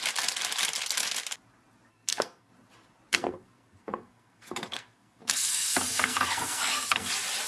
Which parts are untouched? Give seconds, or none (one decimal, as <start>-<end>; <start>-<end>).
0.0-1.9; 2.5-3.1; 7.1-7.5